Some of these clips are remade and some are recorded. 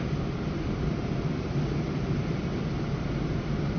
remade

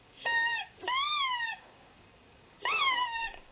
remade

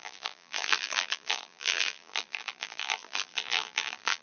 remade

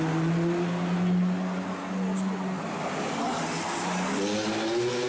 recorded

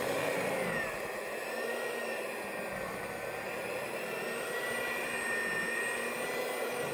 recorded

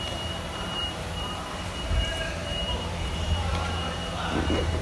remade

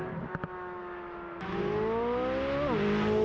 recorded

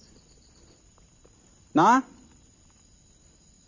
recorded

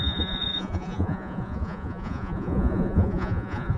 remade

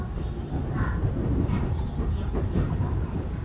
recorded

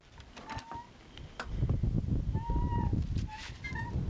recorded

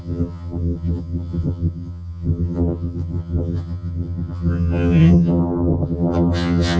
remade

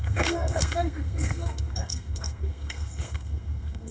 remade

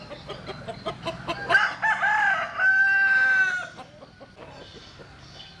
recorded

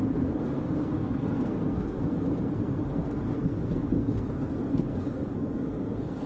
remade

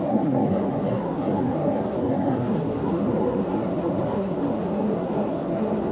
remade